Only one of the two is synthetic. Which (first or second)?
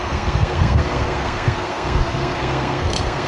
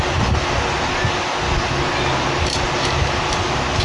first